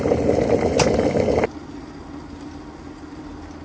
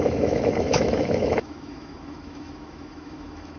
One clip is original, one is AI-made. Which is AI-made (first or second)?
second